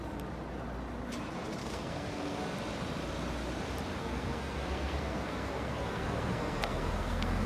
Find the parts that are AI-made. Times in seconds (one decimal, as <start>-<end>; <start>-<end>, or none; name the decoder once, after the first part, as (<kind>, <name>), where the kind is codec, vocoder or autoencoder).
1.6-2.4 (codec, SNAC); 4.0-7.5